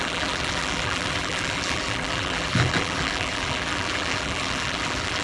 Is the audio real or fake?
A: fake